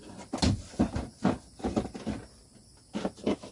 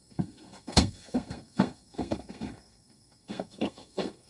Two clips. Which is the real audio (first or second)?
first